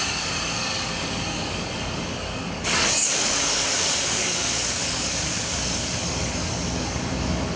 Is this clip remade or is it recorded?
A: remade